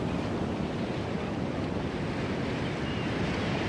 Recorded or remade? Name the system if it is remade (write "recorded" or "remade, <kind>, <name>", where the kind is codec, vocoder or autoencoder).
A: recorded